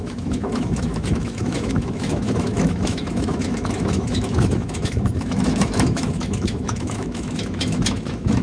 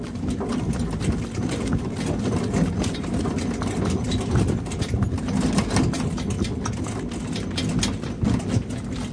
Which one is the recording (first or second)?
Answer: second